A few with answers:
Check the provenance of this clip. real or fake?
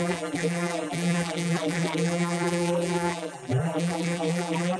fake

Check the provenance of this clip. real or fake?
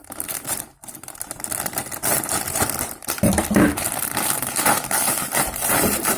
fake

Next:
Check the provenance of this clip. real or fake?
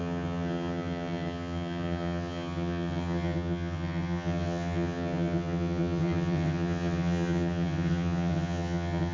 fake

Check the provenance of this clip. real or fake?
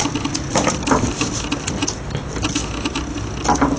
real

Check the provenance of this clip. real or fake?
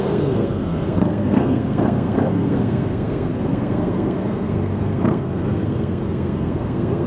fake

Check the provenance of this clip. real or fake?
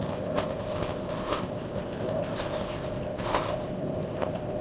fake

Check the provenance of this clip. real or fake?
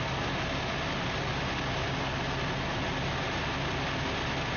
real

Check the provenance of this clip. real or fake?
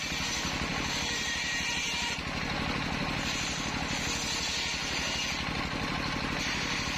real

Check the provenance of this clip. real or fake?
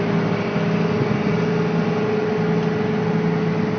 real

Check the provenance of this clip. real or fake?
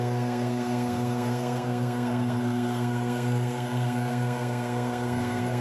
fake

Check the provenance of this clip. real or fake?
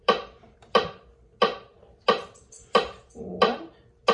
real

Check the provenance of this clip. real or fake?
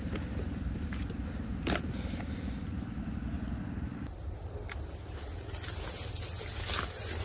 real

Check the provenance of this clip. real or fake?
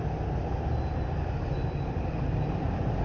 real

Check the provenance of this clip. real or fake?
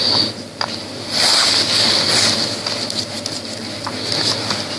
real